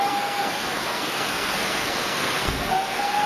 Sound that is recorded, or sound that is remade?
remade